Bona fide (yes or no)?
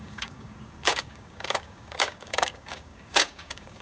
no